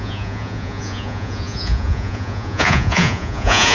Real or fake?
fake